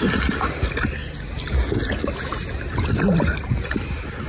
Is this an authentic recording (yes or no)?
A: yes